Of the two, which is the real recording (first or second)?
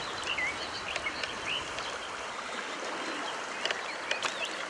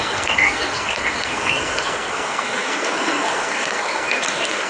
first